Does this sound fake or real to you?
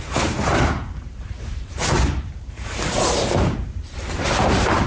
fake